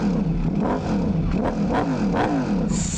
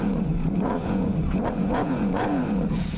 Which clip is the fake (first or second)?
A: second